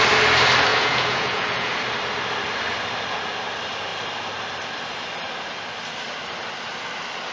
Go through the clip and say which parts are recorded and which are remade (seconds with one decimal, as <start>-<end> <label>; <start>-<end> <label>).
0.0-0.7 recorded; 0.7-1.7 remade; 1.7-7.3 recorded